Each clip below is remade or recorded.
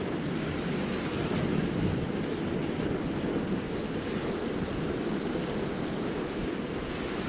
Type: recorded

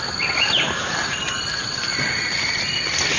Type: recorded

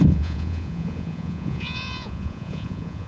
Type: remade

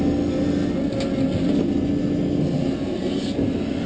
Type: recorded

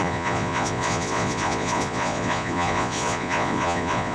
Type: remade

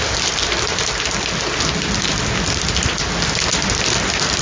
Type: recorded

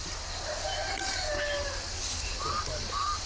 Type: recorded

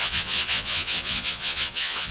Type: remade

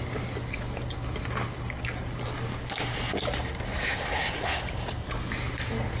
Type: recorded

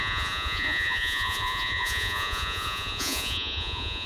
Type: remade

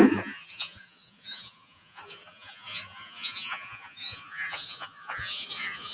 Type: remade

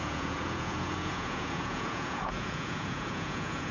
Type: remade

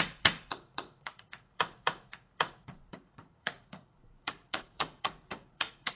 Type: remade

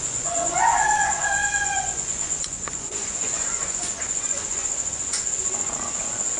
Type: remade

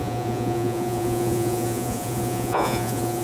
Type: remade